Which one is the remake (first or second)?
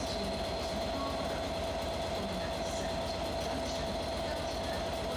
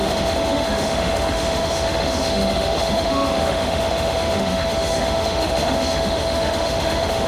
second